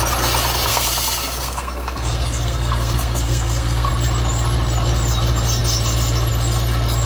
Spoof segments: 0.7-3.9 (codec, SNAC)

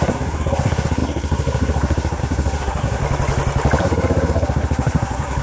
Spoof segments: 0.0-3.0 (codec, SNAC); 3.8-5.4

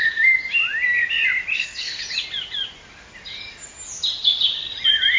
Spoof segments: 1.5-2.0 (codec, SNAC)

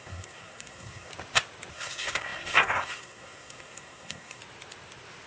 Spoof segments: 0.0-1.1 (codec, SNAC); 1.7-4.4